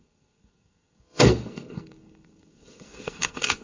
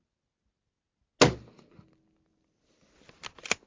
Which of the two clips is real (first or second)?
second